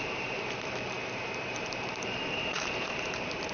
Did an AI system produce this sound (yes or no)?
yes